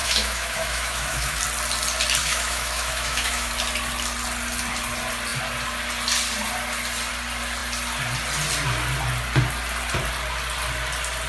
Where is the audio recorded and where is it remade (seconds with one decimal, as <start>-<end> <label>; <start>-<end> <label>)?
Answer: 0.0-1.4 remade; 1.4-2.2 recorded; 2.2-3.5 remade; 3.5-11.3 recorded